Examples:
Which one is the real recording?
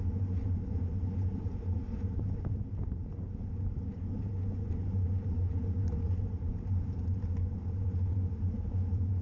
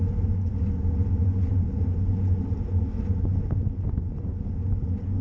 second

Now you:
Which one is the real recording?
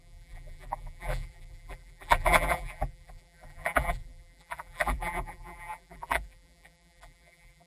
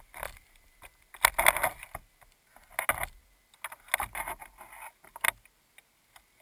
second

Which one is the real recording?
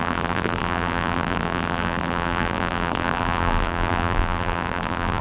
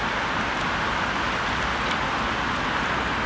second